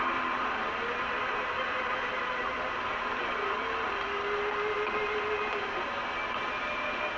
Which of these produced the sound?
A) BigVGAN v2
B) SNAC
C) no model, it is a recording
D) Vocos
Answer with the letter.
C